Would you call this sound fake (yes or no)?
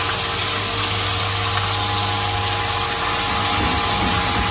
no